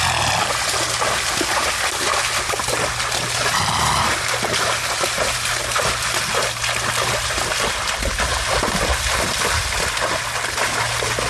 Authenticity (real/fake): real